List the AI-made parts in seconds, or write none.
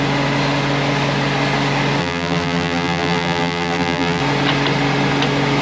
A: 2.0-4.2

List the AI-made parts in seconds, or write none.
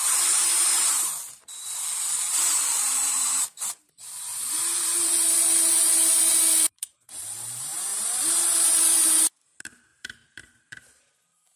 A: 0.0-0.5; 2.6-11.6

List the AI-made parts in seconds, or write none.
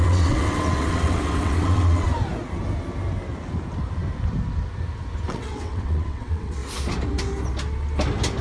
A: 0.0-2.1; 5.3-6.6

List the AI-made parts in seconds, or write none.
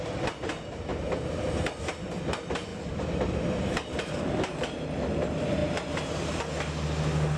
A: 0.9-1.5; 2.7-4.9; 5.6-6.4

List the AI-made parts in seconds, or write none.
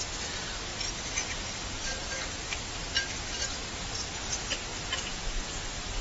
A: none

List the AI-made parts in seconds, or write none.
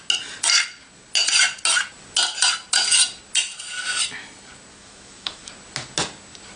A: 4.7-5.5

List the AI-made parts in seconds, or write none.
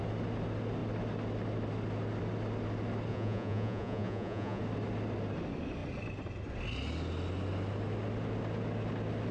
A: 3.1-4.6